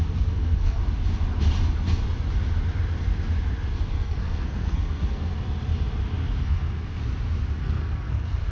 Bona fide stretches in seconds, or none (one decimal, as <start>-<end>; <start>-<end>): 0.8-3.9; 5.3-6.4; 7.0-7.6